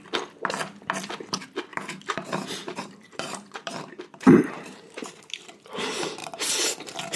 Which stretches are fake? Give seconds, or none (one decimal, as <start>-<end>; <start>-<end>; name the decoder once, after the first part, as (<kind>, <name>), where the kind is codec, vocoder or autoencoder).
1.7-5.2 (vocoder, BigVGAN v2)